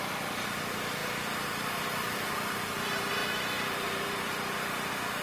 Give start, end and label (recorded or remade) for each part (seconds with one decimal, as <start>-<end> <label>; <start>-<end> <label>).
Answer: 0.0-3.2 recorded; 3.2-4.3 remade; 4.3-5.2 recorded